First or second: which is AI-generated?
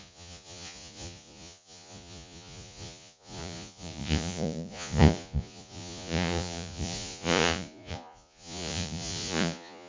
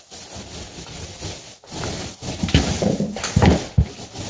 first